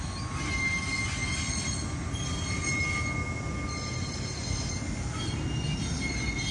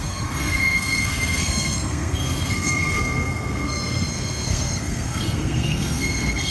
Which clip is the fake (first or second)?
second